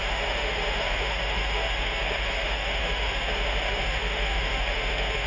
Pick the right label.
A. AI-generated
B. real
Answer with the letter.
A